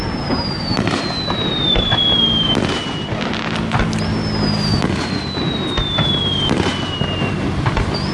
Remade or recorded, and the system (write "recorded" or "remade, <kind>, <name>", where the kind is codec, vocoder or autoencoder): recorded